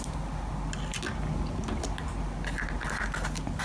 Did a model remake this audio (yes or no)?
no